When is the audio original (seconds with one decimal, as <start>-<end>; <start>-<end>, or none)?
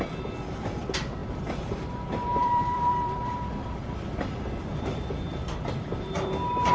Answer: 0.0-1.2; 1.7-2.4